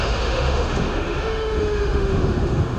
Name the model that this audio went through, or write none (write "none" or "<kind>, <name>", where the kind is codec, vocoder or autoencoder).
autoencoder, DAC-VAE